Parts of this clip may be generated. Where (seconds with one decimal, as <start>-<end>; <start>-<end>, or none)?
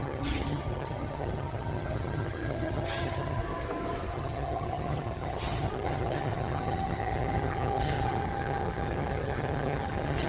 0.0-3.4; 4.1-10.3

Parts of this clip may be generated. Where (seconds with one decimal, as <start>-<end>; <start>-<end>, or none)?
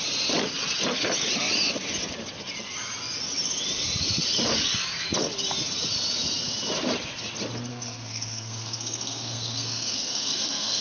7.7-10.8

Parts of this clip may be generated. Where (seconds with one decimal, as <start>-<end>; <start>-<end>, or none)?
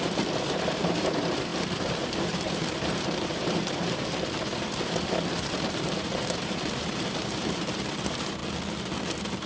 0.0-8.4